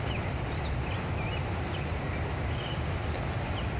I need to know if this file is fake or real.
real